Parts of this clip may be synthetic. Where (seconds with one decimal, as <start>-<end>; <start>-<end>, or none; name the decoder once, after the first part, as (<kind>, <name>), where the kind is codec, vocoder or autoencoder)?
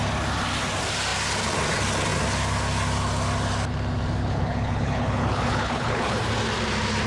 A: 4.2-6.2 (codec, HILCodec)